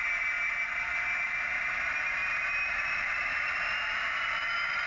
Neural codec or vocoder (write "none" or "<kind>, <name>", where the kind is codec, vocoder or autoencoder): none